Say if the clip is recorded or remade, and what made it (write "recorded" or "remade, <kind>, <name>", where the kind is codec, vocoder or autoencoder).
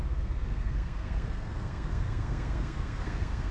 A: remade, codec, SNAC